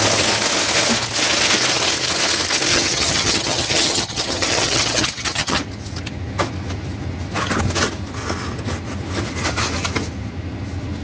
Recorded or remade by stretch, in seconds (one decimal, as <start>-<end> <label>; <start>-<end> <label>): 0.0-2.7 recorded; 2.7-5.6 remade; 5.6-11.0 recorded